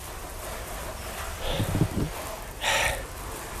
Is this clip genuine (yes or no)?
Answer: yes